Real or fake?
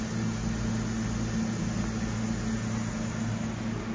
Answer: real